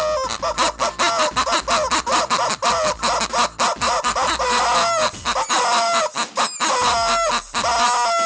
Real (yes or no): yes